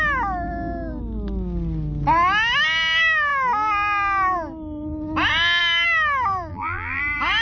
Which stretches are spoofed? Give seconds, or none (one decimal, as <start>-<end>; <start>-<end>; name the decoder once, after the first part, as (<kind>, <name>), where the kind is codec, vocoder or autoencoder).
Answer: 6.5-7.0 (vocoder, BigVGAN v2)

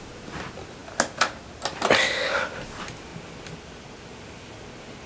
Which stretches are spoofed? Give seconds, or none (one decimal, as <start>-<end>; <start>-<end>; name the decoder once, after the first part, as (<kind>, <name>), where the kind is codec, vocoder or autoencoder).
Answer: none

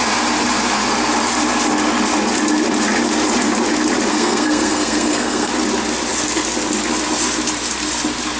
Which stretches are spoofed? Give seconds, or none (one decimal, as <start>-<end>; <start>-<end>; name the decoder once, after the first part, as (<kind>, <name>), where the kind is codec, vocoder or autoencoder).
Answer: 4.1-5.5 (codec, SNAC)

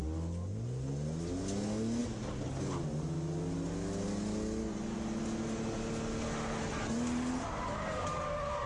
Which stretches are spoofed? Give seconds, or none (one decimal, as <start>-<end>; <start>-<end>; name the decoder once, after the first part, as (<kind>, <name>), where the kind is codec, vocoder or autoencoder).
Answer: none